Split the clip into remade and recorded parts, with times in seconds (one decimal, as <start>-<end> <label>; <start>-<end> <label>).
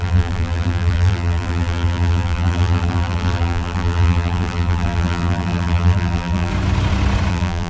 0.0-6.5 remade; 6.5-7.3 recorded; 7.3-7.7 remade